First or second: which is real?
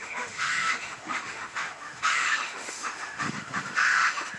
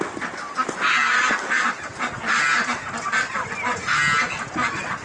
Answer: second